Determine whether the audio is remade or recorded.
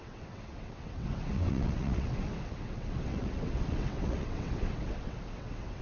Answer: remade